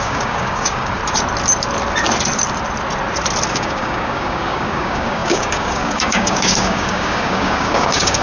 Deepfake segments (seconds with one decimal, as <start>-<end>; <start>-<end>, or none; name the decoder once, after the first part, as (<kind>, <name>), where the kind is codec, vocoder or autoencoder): 0.0-1.0 (codec, DAC); 3.5-8.2